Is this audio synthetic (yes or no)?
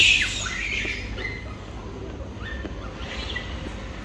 no